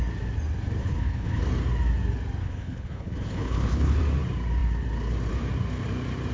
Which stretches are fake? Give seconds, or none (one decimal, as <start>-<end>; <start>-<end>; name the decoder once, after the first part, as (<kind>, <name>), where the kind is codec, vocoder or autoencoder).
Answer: 0.8-1.4 (codec, HILCodec); 2.4-4.0